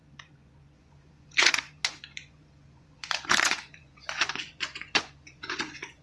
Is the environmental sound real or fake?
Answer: fake